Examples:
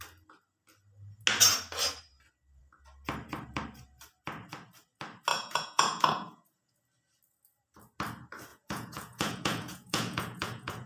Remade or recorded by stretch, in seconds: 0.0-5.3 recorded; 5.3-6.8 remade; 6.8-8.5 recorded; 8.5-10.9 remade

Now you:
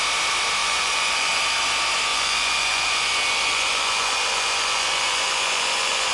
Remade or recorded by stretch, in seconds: 0.0-0.6 recorded; 0.6-1.4 remade; 1.4-2.1 recorded; 2.1-6.1 remade

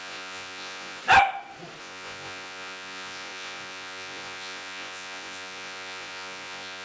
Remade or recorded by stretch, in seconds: 0.0-1.0 remade; 1.0-1.8 recorded; 1.8-6.8 remade

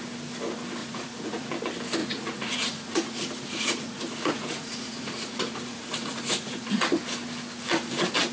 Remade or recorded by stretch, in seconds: 0.0-0.8 recorded; 0.8-1.5 remade; 1.5-2.0 recorded; 2.0-6.7 remade; 6.7-8.3 recorded

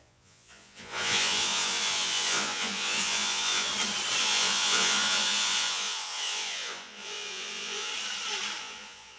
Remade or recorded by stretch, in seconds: 0.0-3.7 remade; 3.7-4.2 recorded; 4.2-7.9 remade; 7.9-8.6 recorded; 8.6-9.2 remade

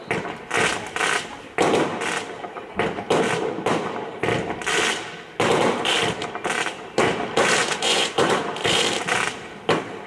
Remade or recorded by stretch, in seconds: 0.0-7.6 recorded; 7.6-8.3 remade; 8.3-10.1 recorded

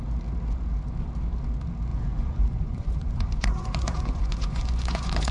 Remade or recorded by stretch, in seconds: 0.0-1.9 recorded; 1.9-5.3 remade